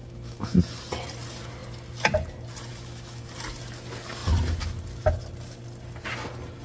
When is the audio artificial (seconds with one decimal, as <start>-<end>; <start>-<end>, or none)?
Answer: 0.0-0.6; 2.7-3.3